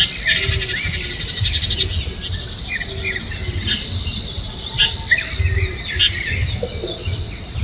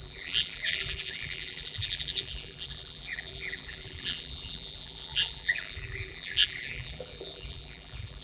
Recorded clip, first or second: first